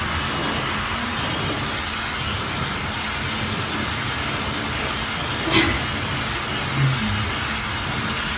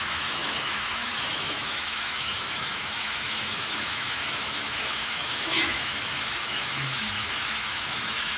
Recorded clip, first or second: first